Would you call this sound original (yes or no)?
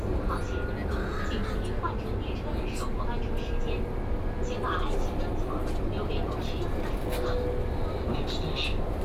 yes